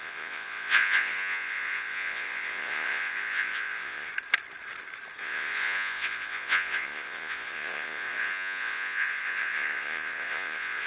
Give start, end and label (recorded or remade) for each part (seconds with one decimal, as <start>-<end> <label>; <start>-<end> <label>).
0.0-4.1 remade; 4.1-5.2 recorded; 5.2-10.9 remade